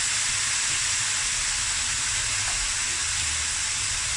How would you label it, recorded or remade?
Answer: recorded